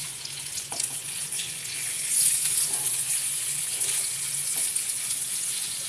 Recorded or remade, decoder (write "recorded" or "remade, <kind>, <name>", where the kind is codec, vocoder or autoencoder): remade, vocoder, Vocos